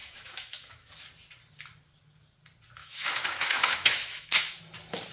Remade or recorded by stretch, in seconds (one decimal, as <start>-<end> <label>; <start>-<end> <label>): 0.0-0.9 remade; 0.9-2.8 recorded; 2.8-4.6 remade; 4.6-5.1 recorded